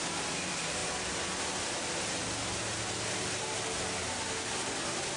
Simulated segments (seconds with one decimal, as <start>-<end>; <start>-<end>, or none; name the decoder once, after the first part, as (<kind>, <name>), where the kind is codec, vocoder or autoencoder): none